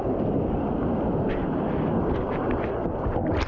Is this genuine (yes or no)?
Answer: yes